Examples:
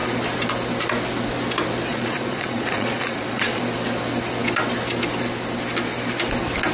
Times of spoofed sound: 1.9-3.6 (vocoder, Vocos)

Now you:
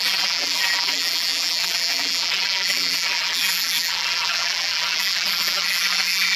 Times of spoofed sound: 0.0-6.4 (vocoder, BigVGAN v2)